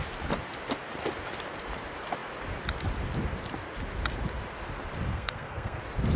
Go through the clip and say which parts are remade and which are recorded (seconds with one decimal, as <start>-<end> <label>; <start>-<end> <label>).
0.0-5.1 recorded; 5.1-5.8 remade; 5.8-6.2 recorded